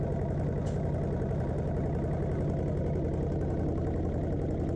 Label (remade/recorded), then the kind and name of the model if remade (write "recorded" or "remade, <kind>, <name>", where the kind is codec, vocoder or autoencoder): recorded